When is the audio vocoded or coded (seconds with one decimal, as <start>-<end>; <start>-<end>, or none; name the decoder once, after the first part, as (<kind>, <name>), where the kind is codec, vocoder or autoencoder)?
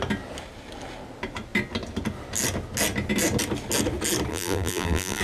4.3-5.2 (vocoder, BigVGAN v2)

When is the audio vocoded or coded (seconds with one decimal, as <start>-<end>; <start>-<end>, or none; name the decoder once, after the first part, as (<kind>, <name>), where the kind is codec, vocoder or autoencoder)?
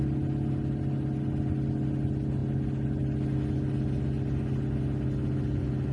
none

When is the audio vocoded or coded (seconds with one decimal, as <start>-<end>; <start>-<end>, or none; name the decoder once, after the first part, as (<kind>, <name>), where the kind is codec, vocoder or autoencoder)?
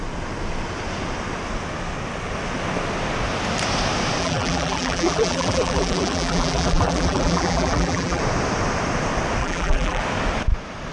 4.2-8.2 (vocoder, BigVGAN v2); 9.4-10.0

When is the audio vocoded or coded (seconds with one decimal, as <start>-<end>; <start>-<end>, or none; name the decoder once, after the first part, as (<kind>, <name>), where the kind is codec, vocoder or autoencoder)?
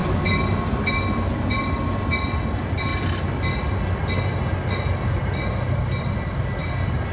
none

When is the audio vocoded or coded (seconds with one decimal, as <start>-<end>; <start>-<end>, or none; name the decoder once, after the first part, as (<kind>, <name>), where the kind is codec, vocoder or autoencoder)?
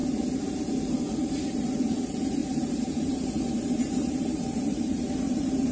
0.0-5.7 (vocoder, BigVGAN v2)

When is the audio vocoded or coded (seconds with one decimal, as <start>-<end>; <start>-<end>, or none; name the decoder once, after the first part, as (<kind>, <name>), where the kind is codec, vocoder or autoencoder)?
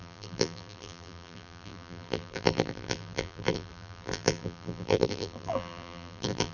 0.0-6.5 (vocoder, BigVGAN v2)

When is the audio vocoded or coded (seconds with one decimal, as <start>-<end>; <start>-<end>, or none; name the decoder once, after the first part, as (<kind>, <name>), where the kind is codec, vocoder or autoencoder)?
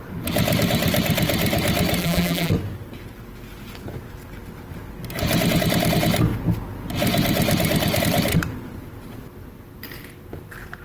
2.0-2.5 (vocoder, BigVGAN v2)